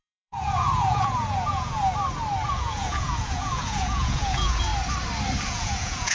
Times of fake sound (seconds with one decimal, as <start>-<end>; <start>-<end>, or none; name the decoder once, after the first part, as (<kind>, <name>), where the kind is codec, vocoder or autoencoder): 0.0-1.9 (vocoder, Vocos); 2.5-4.7; 5.5-6.1

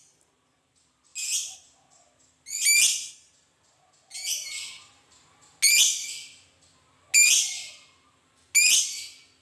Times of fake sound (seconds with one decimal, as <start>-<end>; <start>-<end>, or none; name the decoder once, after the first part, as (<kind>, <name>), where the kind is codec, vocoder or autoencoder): none

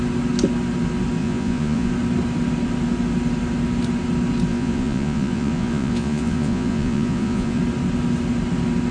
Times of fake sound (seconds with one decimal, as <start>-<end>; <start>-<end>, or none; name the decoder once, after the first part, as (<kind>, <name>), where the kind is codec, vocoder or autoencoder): 1.2-1.9 (vocoder, Vocos); 4.5-7.6

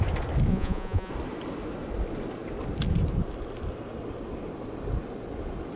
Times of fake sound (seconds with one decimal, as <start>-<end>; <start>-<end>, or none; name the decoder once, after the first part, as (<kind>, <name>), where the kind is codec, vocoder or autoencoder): 0.5-1.1 (vocoder, Vocos)

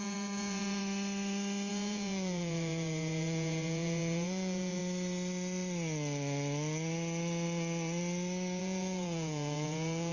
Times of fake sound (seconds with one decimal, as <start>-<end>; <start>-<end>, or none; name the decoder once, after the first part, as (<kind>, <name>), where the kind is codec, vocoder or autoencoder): 0.0-0.8 (vocoder, Vocos); 1.7-4.8; 8.6-10.1

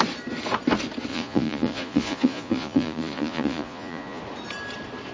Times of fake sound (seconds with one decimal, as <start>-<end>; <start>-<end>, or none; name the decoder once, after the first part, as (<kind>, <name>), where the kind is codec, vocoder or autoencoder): 1.1-4.2 (vocoder, Vocos)